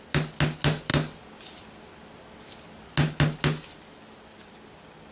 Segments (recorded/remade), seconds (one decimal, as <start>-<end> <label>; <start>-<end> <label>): 0.0-5.1 recorded

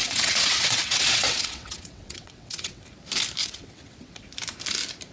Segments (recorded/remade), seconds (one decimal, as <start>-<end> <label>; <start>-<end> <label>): 0.0-2.8 remade; 2.8-3.4 recorded; 3.4-4.3 remade; 4.3-5.1 recorded

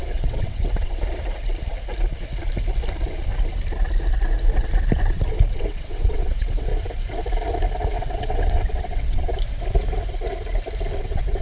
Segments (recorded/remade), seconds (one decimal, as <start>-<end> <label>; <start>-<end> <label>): 0.0-1.0 remade; 1.0-5.5 recorded; 5.5-6.7 remade; 6.7-7.9 recorded; 7.9-9.3 remade; 9.3-11.0 recorded; 11.0-11.4 remade

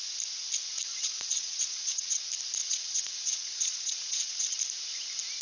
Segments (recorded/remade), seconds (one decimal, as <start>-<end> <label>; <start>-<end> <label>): 0.0-0.9 recorded; 0.9-2.2 remade; 2.2-2.6 recorded; 2.6-4.6 remade; 4.6-5.4 recorded

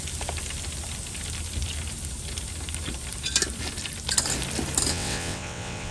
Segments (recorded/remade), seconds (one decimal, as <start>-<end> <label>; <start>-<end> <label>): 0.0-4.9 recorded; 4.9-5.9 remade